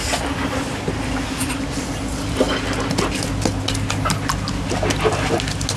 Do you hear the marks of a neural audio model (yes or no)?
no